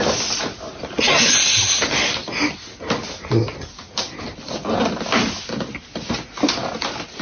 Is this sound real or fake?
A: real